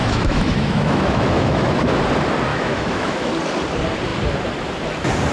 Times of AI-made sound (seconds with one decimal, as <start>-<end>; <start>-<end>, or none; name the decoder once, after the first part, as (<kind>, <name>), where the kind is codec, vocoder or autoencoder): 0.0-2.0 (autoencoder, DAC-VAE); 2.5-3.3